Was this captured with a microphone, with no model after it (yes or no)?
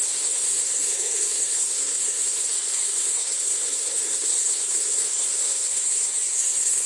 no